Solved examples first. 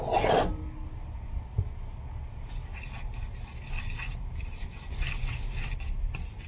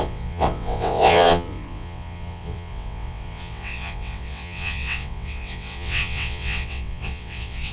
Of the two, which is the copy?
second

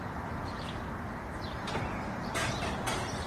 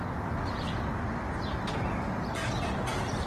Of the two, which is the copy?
first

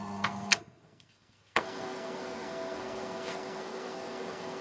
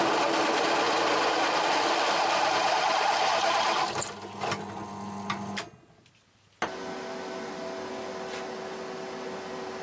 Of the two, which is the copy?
first